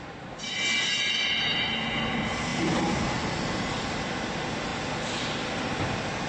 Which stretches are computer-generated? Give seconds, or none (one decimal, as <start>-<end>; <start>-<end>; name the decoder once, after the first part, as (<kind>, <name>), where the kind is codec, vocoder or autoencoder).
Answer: 2.5-4.1 (vocoder, BigVGAN v2)